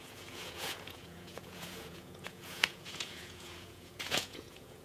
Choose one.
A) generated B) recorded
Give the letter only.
A